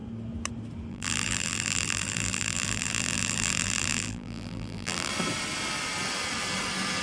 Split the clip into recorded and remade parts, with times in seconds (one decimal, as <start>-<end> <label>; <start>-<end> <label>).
0.0-0.9 recorded; 0.9-5.1 remade; 5.1-7.0 recorded